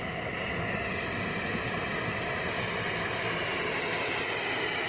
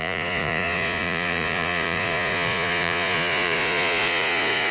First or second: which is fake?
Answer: second